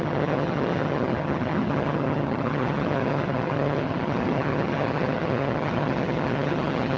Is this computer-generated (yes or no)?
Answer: yes